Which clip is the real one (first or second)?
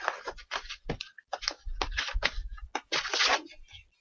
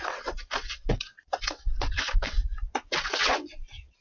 first